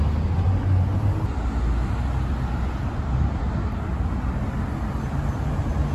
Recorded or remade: recorded